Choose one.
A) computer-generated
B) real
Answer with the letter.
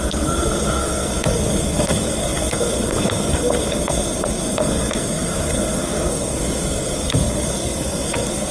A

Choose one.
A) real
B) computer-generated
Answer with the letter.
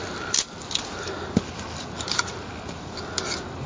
A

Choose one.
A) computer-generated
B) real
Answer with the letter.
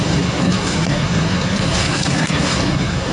A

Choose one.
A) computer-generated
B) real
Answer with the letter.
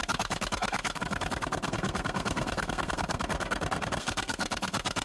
A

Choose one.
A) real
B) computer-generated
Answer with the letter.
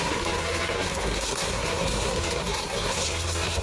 B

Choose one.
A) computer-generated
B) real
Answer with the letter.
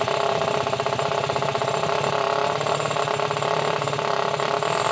B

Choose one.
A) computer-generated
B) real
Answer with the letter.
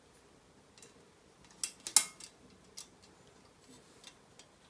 B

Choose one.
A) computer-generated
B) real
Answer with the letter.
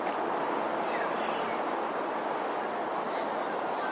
B